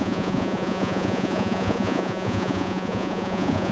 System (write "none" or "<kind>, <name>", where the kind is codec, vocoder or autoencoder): vocoder, Vocos